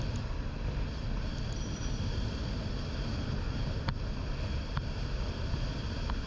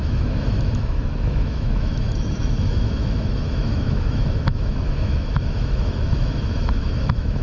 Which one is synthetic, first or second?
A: second